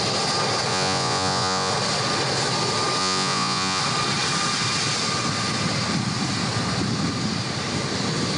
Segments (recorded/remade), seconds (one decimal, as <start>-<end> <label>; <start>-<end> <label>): 0.0-0.7 recorded; 0.7-1.7 remade; 1.7-3.0 recorded; 3.0-3.8 remade; 3.8-8.4 recorded